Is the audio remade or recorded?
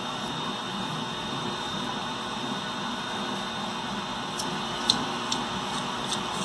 recorded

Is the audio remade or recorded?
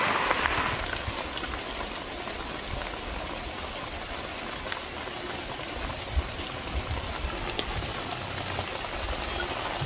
recorded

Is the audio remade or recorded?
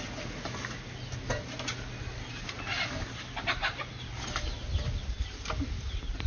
recorded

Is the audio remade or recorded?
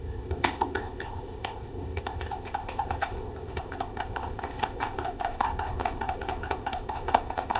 remade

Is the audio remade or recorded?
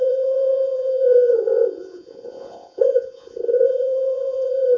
remade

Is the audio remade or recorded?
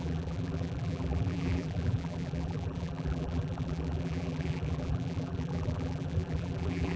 remade